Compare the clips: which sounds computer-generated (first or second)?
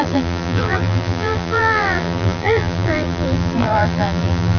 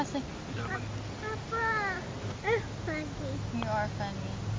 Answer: first